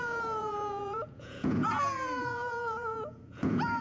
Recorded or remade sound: remade